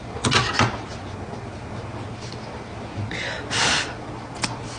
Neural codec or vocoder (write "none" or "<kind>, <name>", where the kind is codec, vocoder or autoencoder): none